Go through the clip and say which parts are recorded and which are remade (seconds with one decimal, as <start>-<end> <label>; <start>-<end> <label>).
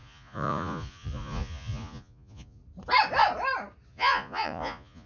0.0-2.6 remade; 2.6-3.9 recorded; 3.9-5.1 remade